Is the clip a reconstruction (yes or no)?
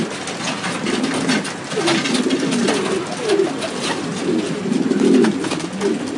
no